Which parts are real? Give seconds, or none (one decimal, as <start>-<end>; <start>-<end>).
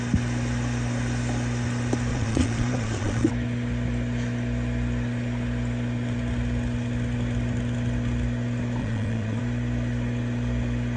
0.0-2.1; 3.3-8.8; 9.4-11.0